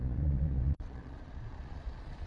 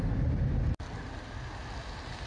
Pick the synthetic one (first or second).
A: first